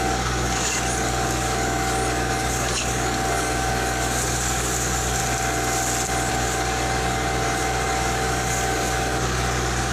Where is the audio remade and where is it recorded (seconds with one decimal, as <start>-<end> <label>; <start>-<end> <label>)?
0.0-5.2 remade; 5.2-6.3 recorded; 6.3-9.9 remade